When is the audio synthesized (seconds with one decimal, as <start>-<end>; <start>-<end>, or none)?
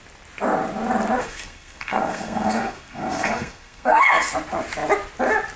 1.2-4.2